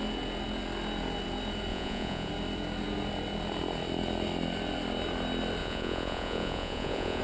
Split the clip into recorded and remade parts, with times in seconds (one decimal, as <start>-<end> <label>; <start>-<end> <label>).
0.0-1.7 recorded; 1.7-2.3 remade; 2.3-5.6 recorded; 5.6-7.2 remade